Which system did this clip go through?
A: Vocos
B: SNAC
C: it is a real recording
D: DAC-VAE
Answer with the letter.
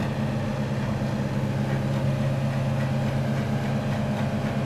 C